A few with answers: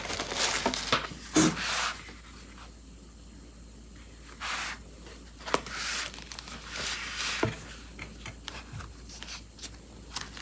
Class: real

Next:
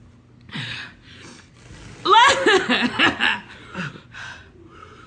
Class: real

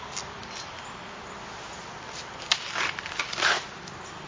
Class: real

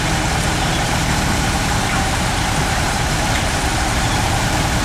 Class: fake